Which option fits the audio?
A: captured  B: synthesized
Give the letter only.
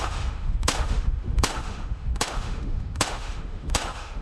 B